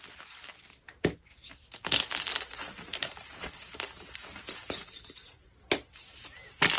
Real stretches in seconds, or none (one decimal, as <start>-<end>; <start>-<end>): 0.0-2.9; 5.0-6.8